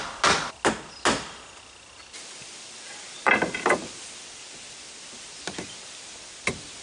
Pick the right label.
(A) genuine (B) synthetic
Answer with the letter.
A